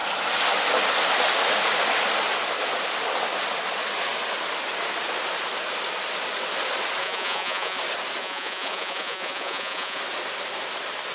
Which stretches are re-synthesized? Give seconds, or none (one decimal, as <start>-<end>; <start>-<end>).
7.0-7.8; 8.2-10.0